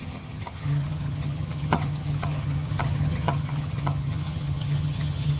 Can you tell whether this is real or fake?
fake